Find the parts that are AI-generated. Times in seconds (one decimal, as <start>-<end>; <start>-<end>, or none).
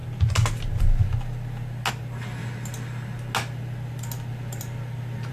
none